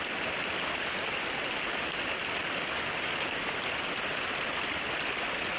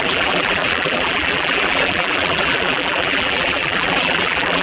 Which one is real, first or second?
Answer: first